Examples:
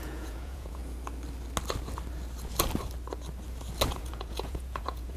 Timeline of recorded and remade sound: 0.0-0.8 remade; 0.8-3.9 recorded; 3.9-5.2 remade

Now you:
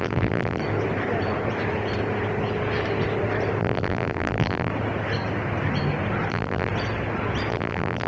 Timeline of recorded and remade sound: 0.0-0.6 remade; 0.6-3.6 recorded; 3.6-4.7 remade; 4.7-6.3 recorded; 6.3-6.7 remade; 6.7-7.5 recorded; 7.5-8.1 remade

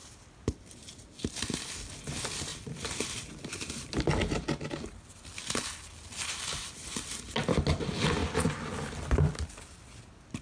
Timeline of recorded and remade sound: 0.0-10.4 recorded

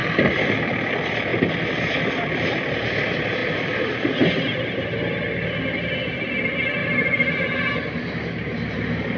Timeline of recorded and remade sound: 0.0-0.9 remade; 0.9-3.4 recorded; 3.4-5.0 remade; 5.0-6.8 recorded; 6.8-7.7 remade; 7.7-9.2 recorded